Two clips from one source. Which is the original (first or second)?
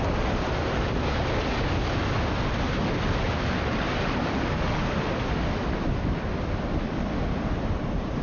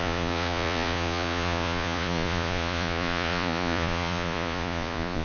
first